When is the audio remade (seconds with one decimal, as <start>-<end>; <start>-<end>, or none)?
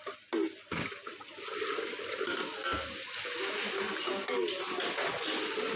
none